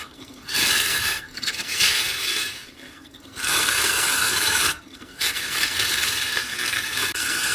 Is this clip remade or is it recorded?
remade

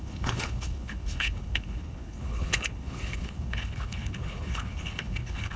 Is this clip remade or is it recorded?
remade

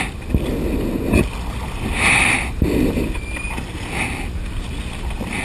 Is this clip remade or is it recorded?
recorded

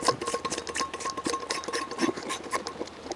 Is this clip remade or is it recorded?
recorded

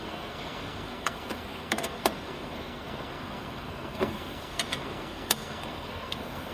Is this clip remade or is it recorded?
remade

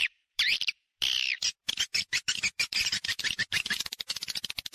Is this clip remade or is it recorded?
remade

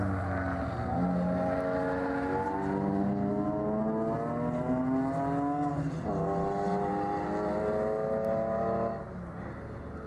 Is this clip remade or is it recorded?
recorded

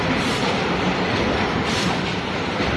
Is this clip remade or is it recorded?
recorded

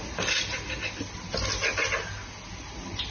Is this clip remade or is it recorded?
recorded